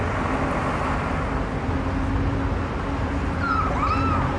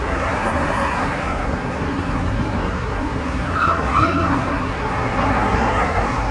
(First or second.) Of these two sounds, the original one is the first